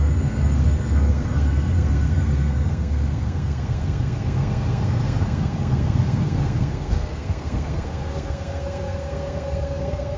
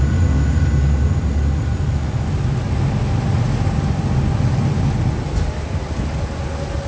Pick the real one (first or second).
second